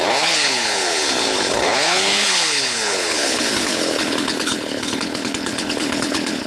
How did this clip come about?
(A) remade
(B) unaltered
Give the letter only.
A